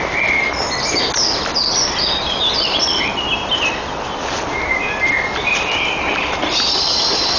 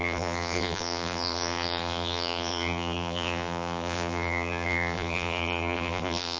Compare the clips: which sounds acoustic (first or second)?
first